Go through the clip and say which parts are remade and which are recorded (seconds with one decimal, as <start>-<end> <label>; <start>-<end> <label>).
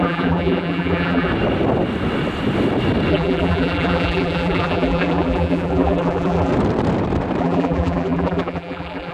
0.0-1.3 remade; 1.3-3.1 recorded; 3.1-6.5 remade; 6.5-7.4 recorded; 7.4-9.1 remade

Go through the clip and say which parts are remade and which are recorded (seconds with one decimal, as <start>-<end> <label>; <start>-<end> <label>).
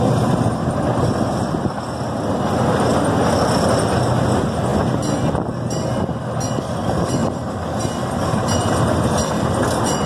0.0-7.2 recorded; 7.2-7.8 remade; 7.8-10.1 recorded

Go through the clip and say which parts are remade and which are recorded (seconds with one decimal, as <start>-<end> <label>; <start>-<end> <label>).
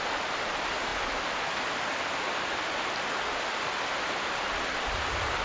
0.0-5.4 recorded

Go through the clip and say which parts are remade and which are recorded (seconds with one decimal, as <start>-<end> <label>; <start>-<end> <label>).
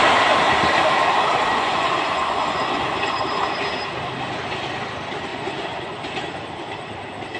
0.0-1.5 recorded; 1.5-3.2 remade; 3.2-5.3 recorded; 5.3-6.0 remade; 6.0-7.4 recorded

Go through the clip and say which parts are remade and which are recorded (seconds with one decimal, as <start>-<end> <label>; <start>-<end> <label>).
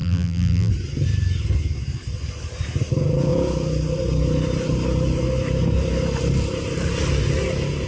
0.0-0.7 remade; 0.7-7.9 recorded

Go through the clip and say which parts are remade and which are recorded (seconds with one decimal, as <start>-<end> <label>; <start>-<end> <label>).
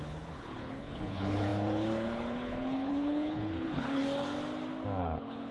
0.0-4.0 remade; 4.0-5.0 recorded; 5.0-5.5 remade